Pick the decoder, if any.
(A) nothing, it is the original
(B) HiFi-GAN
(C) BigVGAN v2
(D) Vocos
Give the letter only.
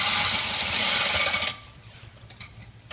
C